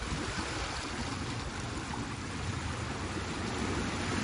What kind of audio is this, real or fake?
real